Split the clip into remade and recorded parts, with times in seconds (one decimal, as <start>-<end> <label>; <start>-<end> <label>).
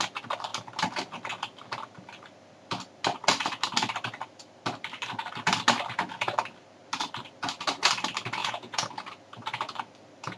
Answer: 0.0-8.4 recorded; 8.4-8.9 remade; 8.9-10.4 recorded